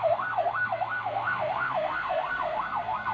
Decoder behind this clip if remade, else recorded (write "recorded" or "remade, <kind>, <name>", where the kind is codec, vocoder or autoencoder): remade, codec, SNAC